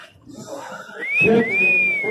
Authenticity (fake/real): real